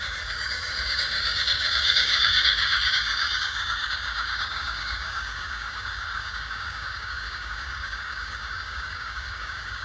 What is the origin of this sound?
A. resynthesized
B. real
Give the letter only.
A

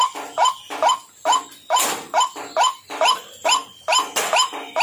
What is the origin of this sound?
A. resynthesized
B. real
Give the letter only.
B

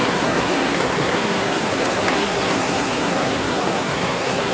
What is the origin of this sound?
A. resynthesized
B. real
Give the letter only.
A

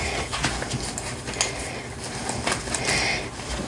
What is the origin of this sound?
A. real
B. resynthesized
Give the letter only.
A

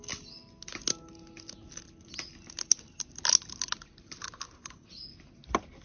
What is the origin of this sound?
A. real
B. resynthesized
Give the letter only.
A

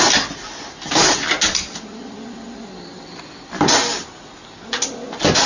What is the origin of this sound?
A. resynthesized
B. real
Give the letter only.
B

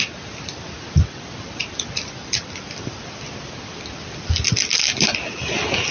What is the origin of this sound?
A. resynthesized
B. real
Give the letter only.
B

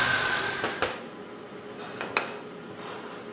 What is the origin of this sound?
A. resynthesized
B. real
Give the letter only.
B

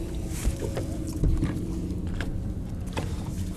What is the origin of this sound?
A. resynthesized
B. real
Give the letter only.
B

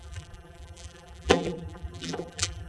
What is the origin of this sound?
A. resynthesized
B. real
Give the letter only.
A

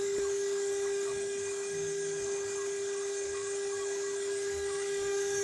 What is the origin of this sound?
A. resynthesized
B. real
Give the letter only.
A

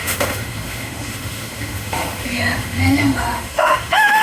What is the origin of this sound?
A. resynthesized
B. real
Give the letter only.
A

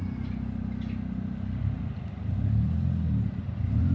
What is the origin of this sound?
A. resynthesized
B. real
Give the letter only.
B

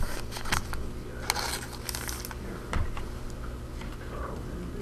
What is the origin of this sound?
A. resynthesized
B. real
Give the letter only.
B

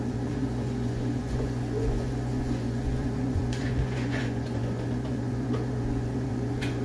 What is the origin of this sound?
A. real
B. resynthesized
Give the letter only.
B